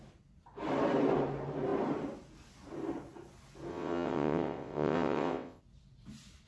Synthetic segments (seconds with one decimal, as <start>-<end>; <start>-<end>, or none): 3.7-5.6